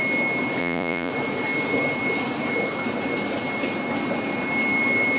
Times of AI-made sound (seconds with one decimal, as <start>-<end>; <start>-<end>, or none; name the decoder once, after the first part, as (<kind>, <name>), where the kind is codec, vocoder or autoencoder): 0.6-1.1 (vocoder, Vocos)